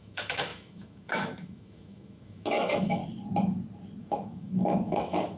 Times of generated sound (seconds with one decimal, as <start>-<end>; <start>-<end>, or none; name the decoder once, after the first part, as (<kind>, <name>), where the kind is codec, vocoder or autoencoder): 0.0-3.0 (autoencoder, DAC-VAE); 4.0-5.4